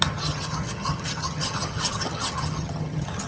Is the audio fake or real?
fake